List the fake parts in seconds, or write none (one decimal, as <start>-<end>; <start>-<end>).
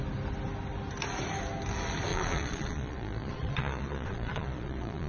2.1-5.1